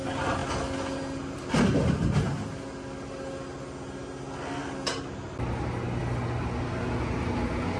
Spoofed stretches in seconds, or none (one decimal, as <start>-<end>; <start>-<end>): none